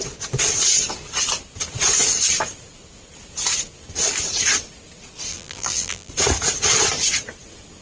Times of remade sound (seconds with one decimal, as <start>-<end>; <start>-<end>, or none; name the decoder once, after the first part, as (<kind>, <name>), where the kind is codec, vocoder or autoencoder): 5.3-6.1 (vocoder, BigVGAN v2)